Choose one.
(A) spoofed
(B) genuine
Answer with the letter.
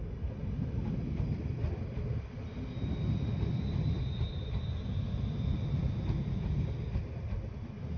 B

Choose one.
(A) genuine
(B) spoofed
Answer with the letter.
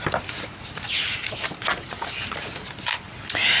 A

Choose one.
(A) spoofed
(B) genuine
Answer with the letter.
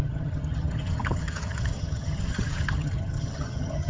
A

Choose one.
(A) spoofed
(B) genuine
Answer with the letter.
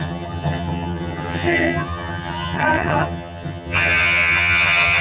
A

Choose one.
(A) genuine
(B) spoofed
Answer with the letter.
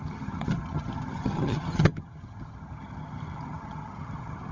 B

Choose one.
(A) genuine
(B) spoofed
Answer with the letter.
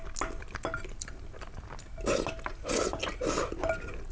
A